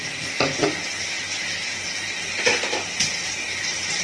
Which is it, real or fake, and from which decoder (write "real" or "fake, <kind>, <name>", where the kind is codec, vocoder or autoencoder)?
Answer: real